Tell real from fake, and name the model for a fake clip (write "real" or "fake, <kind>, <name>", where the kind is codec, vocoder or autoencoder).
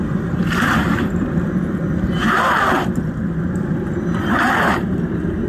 fake, vocoder, BigVGAN v2